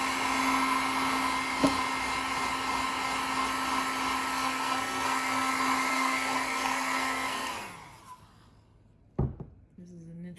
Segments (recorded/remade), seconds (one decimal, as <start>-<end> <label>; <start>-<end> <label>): 0.0-4.3 recorded; 4.3-5.5 remade; 5.5-5.9 recorded; 5.9-7.7 remade; 7.7-10.4 recorded